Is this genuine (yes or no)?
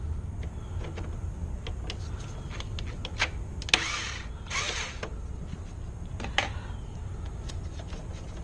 yes